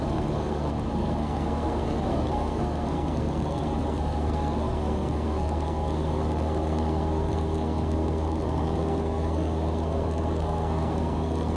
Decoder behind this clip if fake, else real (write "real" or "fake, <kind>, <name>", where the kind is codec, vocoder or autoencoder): fake, codec, SNAC